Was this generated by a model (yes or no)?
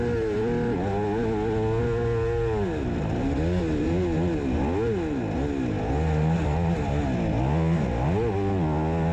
no